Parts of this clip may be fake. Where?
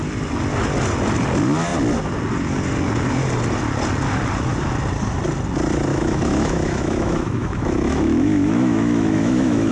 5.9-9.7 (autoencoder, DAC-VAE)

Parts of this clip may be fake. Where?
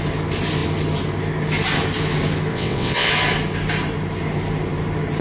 2.5-3.1 (vocoder, WaveNeXt)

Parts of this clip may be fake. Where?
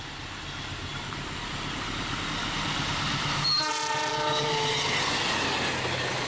0.9-4.7 (vocoder, BigVGAN v2)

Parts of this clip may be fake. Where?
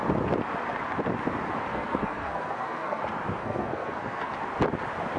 1.7-3.0 (codec, SNAC); 3.4-4.3